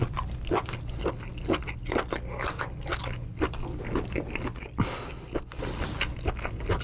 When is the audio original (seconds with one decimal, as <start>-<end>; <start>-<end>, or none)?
0.0-6.8